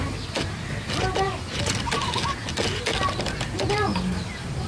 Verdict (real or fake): real